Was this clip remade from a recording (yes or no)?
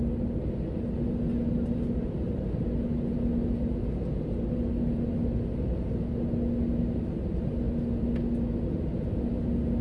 no